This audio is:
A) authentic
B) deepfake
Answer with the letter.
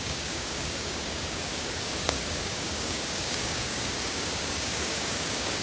B